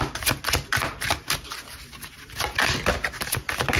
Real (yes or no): yes